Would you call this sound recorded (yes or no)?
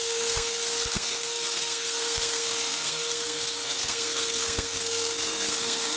no